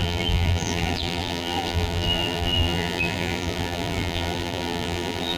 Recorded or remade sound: remade